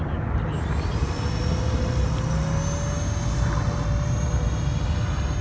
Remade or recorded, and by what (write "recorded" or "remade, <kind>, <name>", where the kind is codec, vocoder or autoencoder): recorded